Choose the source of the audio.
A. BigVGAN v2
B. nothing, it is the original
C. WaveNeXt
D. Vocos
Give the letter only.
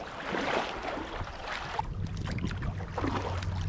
B